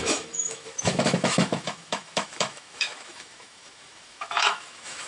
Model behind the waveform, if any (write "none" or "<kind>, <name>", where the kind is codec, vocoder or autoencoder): autoencoder, DAC-VAE